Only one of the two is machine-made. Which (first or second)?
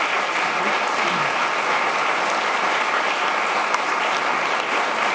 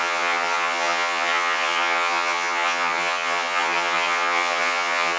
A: second